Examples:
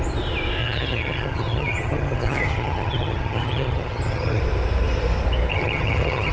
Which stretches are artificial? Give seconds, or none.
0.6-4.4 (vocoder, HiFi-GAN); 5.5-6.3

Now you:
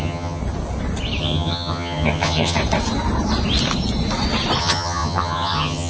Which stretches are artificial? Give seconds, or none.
0.0-0.4 (vocoder, HiFi-GAN); 1.2-2.6; 4.6-5.9

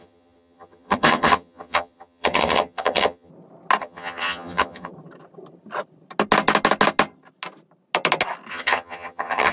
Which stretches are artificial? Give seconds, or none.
0.0-3.3 (vocoder, HiFi-GAN); 3.8-4.9; 8.5-9.5

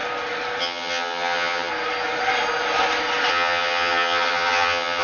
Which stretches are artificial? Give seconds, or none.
0.6-1.7 (vocoder, HiFi-GAN); 3.3-5.0

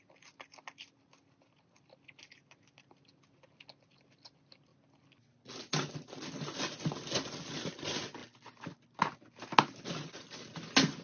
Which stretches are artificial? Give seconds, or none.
none

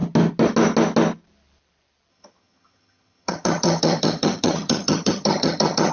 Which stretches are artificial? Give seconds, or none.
2.1-5.9 (vocoder, HiFi-GAN)

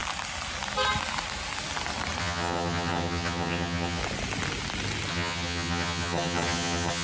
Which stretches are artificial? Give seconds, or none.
2.2-4.0 (vocoder, HiFi-GAN); 5.1-7.0